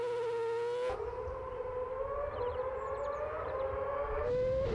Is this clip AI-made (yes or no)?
no